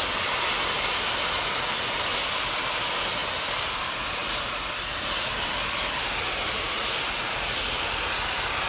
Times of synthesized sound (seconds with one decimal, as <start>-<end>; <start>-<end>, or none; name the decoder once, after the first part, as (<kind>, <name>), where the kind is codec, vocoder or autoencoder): none